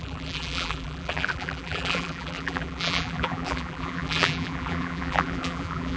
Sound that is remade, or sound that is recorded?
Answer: remade